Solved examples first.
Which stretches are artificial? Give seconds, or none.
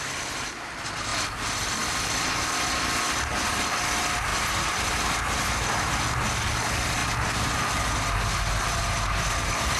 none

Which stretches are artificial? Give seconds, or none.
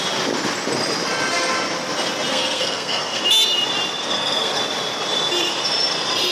2.3-3.2 (codec, SNAC); 4.0-4.6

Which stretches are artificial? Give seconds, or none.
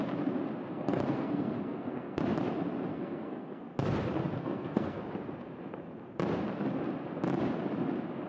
0.7-2.2 (codec, SNAC); 2.9-3.6; 4.4-5.0